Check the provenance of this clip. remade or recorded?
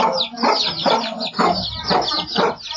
recorded